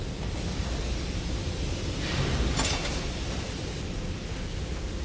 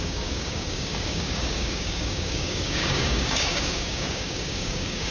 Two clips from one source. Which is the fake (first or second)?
second